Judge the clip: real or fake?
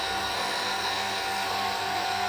fake